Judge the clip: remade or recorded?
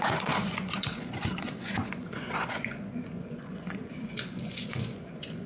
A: remade